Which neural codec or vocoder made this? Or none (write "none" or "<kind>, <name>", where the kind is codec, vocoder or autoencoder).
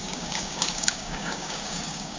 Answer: codec, DAC